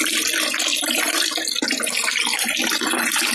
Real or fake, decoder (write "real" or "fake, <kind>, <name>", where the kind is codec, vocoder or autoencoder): real